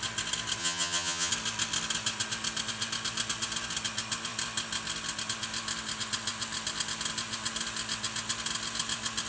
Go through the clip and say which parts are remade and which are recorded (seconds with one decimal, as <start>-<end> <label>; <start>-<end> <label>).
0.0-0.6 recorded; 0.6-1.3 remade; 1.3-9.3 recorded